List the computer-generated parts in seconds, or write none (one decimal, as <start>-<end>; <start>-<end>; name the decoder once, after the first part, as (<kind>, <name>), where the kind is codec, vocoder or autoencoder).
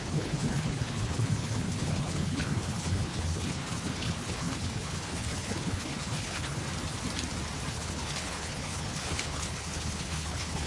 0.0-6.6 (codec, HILCodec); 7.7-10.7